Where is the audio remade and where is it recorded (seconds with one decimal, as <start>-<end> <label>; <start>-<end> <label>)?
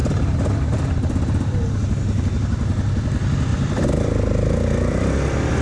0.0-1.7 remade; 1.7-3.5 recorded; 3.5-5.0 remade; 5.0-5.6 recorded